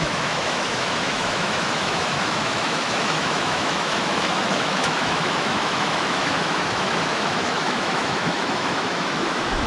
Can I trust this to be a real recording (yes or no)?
no